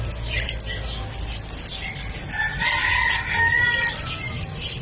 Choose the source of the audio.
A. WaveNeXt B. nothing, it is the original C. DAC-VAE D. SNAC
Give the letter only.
B